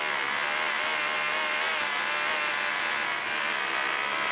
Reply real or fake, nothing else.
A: real